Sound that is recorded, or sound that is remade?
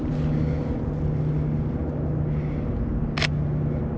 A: recorded